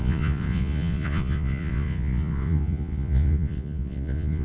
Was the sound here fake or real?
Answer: fake